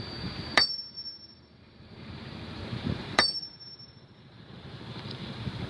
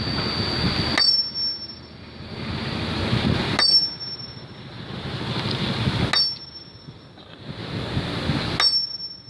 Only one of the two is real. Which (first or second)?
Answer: second